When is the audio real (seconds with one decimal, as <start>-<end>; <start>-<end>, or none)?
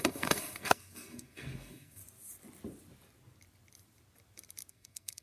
2.0-4.7